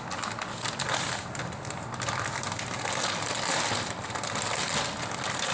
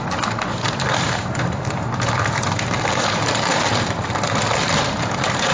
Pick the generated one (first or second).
second